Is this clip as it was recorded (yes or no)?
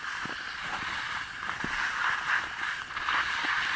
yes